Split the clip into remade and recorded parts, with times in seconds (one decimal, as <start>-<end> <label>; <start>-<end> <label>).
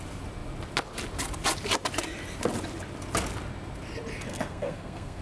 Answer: 0.0-4.3 recorded; 4.3-5.2 remade